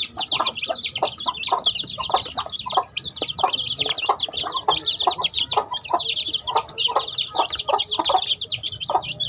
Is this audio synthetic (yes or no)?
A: no